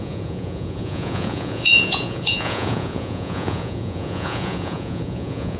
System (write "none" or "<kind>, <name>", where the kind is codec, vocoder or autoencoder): vocoder, Vocos